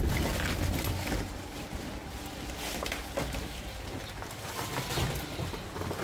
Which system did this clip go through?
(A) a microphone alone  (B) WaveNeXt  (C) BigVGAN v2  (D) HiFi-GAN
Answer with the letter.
A